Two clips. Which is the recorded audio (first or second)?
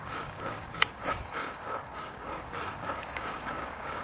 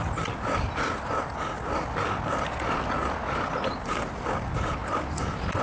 second